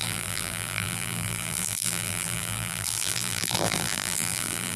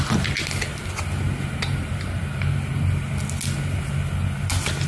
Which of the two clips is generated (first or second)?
first